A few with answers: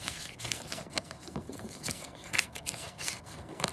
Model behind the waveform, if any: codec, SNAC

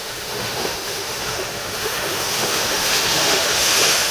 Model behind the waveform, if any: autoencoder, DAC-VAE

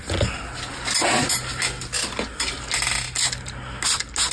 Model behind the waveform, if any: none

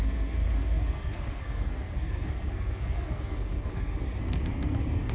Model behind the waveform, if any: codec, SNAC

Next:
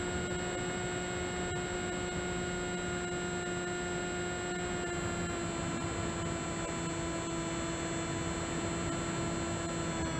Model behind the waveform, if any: none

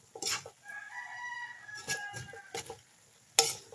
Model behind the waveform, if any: none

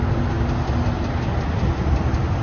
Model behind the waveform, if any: none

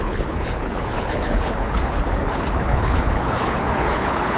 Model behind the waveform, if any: codec, HILCodec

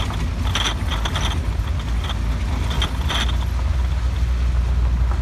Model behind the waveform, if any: none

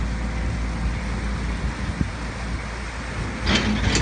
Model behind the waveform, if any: none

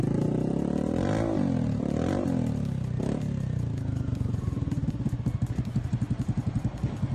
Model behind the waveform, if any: none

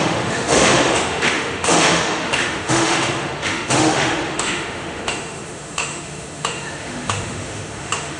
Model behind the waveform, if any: autoencoder, DAC-VAE